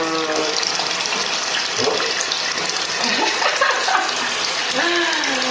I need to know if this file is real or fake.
real